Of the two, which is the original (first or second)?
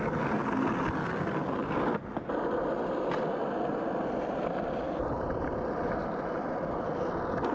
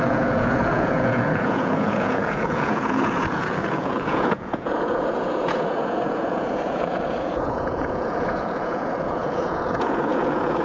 first